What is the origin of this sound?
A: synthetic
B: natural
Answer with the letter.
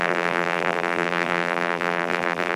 A